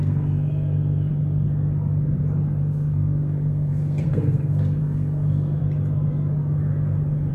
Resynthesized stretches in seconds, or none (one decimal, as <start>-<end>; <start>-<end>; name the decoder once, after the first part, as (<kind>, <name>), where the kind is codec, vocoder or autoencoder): 0.0-1.1 (codec, SNAC); 2.6-5.6